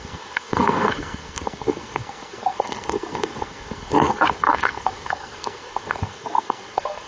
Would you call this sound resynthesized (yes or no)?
yes